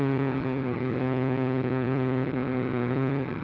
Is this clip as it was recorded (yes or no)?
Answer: no